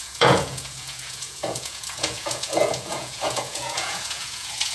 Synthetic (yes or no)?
yes